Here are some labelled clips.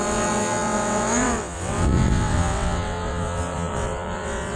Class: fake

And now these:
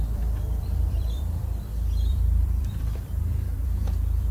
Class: fake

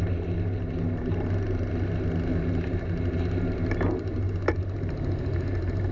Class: real